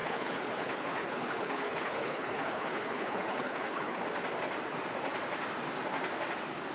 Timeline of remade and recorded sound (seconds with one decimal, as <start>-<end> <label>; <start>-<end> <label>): 0.0-4.0 remade; 4.0-6.7 recorded